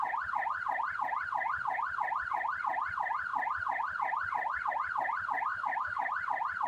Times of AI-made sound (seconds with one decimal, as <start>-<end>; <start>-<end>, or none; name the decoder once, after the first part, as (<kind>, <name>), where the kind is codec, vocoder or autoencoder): 5.5-6.1 (autoencoder, DAC-VAE)